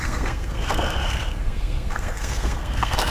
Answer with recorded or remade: remade